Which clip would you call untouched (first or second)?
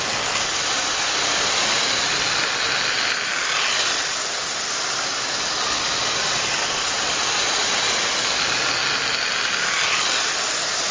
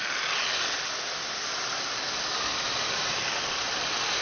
first